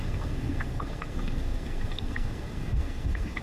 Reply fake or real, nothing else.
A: fake